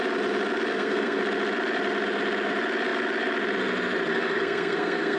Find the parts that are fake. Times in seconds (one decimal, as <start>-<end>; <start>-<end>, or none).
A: 0.7-1.2; 4.1-5.2